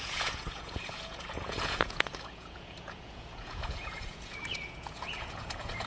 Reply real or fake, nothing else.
fake